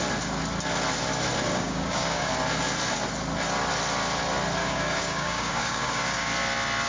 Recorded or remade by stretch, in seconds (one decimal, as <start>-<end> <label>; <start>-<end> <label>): 0.0-1.5 recorded; 1.5-2.3 remade; 2.3-4.6 recorded; 4.6-6.3 remade; 6.3-6.9 recorded